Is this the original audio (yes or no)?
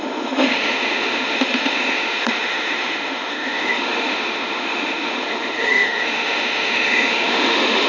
no